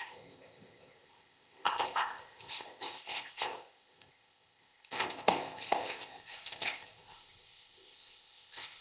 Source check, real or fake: fake